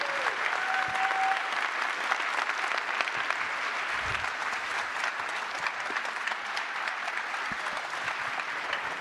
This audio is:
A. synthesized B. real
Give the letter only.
B